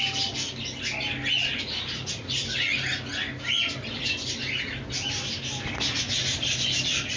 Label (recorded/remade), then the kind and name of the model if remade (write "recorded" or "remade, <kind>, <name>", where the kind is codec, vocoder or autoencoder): recorded